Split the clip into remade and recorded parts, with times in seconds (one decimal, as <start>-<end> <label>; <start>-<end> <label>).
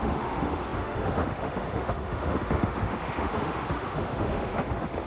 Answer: 0.0-5.1 remade